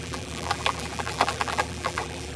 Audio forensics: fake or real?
fake